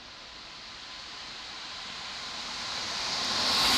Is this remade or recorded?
recorded